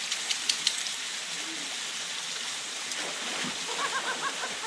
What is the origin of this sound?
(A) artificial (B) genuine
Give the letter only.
B